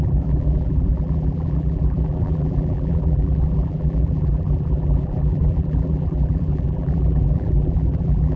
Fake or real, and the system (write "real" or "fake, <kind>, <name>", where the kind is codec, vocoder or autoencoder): fake, vocoder, BigVGAN v2